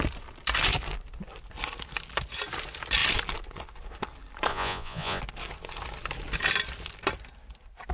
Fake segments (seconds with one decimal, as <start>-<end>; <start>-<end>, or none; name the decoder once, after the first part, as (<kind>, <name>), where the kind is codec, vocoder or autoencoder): 4.5-5.2 (vocoder, Vocos)